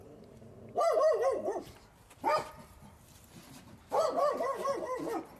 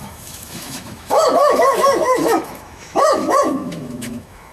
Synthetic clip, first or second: second